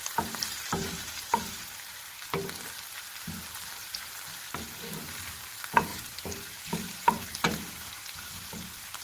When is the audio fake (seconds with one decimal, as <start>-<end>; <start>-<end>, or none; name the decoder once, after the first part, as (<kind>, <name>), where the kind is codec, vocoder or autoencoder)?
5.9-8.5 (vocoder, BigVGAN v2)